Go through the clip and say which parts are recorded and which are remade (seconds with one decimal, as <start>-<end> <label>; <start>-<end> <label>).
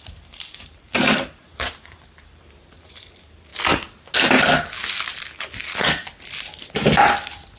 0.0-3.5 remade; 3.5-7.6 recorded